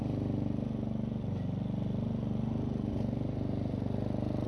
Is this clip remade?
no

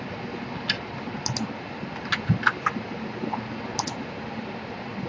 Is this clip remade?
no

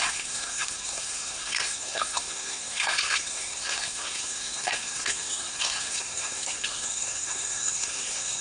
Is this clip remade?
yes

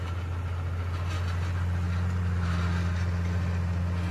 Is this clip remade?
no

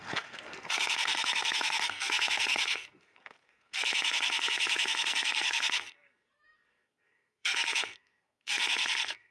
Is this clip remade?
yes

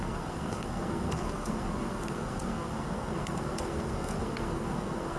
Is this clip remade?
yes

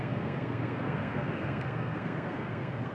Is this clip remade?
yes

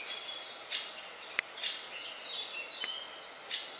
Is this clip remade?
no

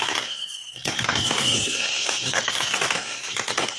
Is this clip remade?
yes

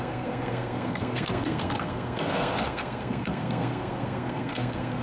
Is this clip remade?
yes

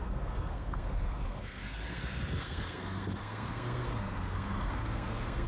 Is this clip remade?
yes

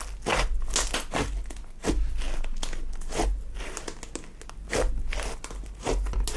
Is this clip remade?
no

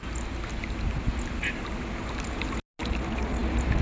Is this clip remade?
no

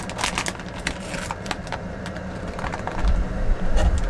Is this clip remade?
no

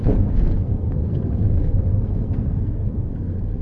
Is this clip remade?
yes